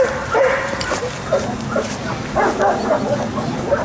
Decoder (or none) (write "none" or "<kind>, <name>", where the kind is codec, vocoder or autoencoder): none